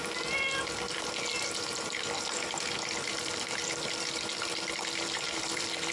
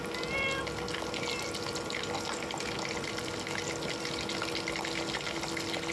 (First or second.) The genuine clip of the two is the second